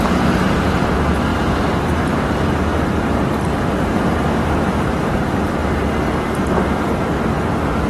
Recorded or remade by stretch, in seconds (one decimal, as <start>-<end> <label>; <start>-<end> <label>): 0.0-3.9 remade; 3.9-4.7 recorded; 4.7-5.6 remade; 5.6-7.9 recorded